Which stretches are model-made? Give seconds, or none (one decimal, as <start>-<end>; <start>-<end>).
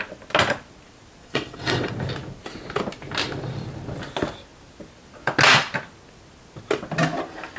1.2-1.9